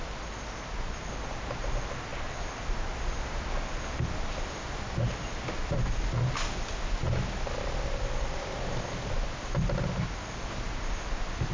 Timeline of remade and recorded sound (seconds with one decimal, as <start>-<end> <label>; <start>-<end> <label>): 0.0-11.5 recorded